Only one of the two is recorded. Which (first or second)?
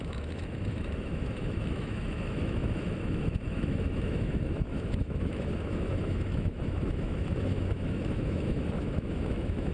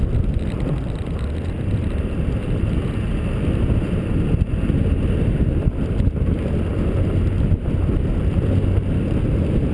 second